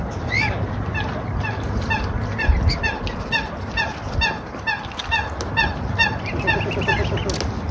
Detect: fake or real real